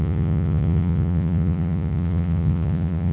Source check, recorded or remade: remade